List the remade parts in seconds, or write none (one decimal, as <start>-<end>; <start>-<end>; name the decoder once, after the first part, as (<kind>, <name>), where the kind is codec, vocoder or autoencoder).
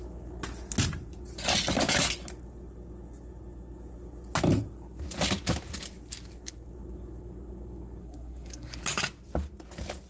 8.0-8.8 (codec, SNAC)